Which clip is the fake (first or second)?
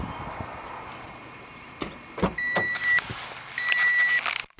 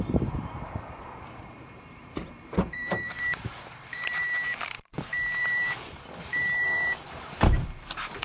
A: second